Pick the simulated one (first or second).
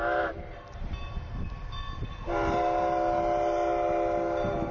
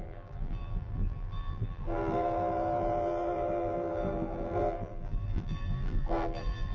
second